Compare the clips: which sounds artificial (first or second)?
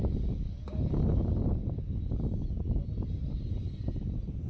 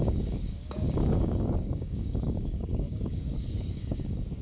second